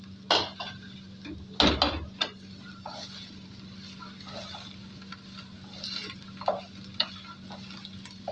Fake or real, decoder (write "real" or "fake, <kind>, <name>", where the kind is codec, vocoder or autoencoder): real